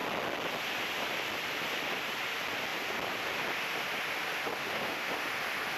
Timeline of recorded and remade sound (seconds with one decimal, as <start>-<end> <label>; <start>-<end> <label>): 0.0-4.5 recorded; 4.5-5.1 remade; 5.1-5.8 recorded